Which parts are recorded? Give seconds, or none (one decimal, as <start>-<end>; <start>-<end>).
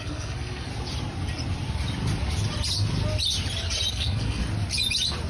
0.7-3.9; 4.4-5.3